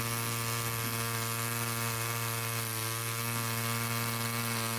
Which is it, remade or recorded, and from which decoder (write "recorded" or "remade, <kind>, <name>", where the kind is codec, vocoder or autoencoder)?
recorded